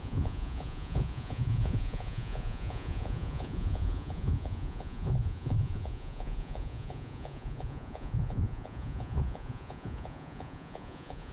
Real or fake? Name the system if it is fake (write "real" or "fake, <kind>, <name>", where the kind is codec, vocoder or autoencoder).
fake, vocoder, Vocos